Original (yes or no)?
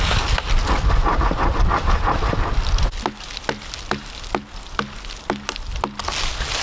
yes